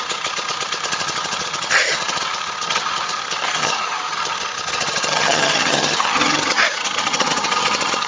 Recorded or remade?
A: remade